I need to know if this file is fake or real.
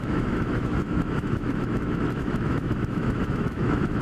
fake